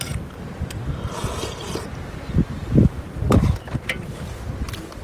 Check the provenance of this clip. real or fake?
real